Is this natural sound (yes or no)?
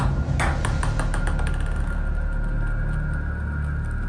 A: yes